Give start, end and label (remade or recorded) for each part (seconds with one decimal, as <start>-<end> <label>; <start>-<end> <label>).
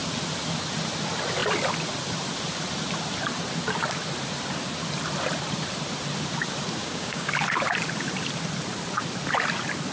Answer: 0.0-6.8 recorded; 6.8-7.3 remade; 7.3-9.9 recorded